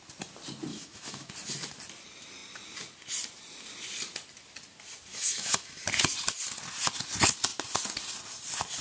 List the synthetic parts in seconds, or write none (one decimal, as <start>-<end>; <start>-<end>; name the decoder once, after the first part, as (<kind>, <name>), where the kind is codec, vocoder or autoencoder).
0.7-1.3 (autoencoder, DAC-VAE); 5.1-5.8